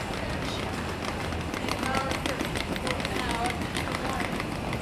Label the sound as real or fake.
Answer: real